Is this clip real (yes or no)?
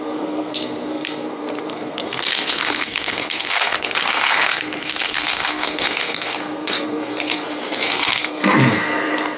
no